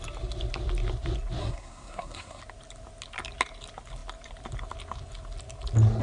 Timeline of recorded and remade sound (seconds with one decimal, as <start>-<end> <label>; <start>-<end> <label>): 0.0-1.4 recorded; 1.4-2.4 remade; 2.4-6.0 recorded